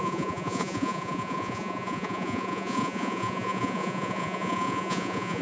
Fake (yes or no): yes